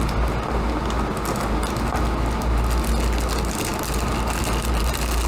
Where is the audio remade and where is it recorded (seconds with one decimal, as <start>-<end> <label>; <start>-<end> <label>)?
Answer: 0.0-5.3 recorded